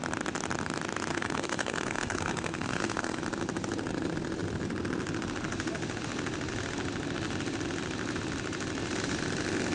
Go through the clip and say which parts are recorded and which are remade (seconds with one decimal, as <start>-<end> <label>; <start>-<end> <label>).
0.0-1.1 recorded; 1.1-3.2 remade; 3.2-9.7 recorded